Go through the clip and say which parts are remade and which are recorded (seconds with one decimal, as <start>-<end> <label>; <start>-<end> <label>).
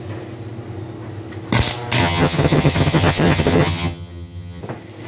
0.0-2.0 recorded; 2.0-4.6 remade; 4.6-5.1 recorded